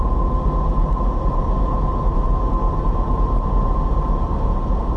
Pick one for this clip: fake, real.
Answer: real